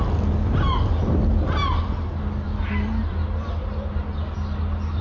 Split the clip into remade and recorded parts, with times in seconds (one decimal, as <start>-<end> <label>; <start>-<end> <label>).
0.0-5.0 recorded